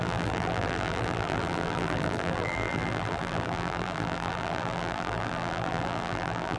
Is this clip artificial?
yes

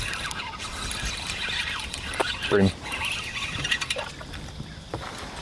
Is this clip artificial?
yes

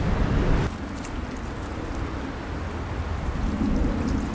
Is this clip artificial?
no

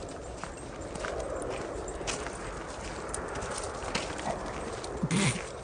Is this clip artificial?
no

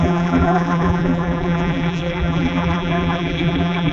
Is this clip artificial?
yes